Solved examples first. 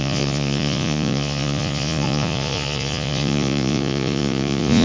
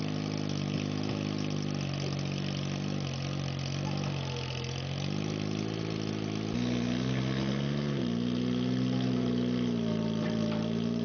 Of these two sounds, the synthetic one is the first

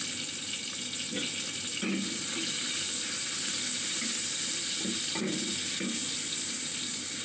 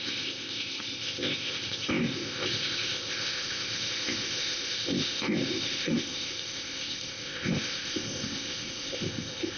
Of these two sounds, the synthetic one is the second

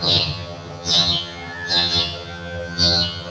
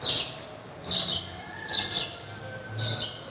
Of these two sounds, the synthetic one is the first